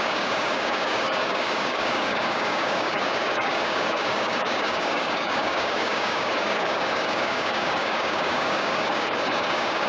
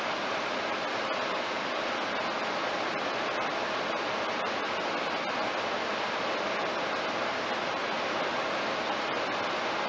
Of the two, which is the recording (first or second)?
second